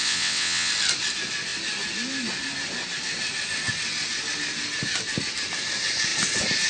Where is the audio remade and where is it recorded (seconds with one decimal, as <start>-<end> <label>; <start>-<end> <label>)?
0.0-0.7 remade; 0.7-6.7 recorded